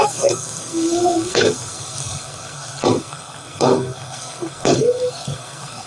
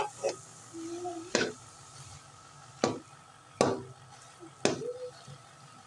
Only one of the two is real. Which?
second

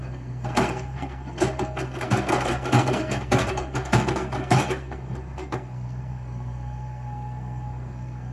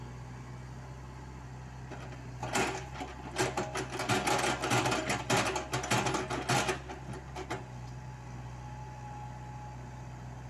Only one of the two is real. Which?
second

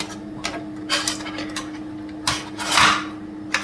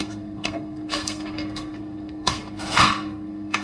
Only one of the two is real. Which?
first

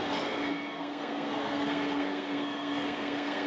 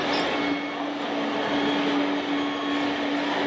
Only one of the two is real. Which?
second